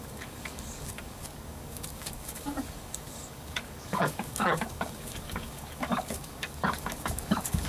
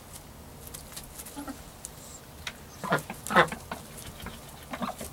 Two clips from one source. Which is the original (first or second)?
second